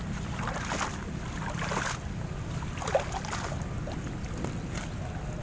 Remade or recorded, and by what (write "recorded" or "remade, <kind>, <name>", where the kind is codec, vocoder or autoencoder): recorded